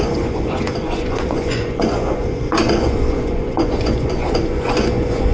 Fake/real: fake